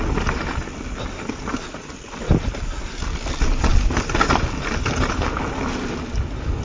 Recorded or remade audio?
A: recorded